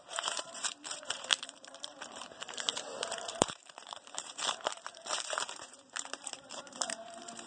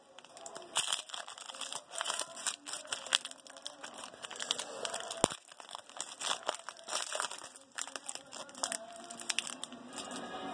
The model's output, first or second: first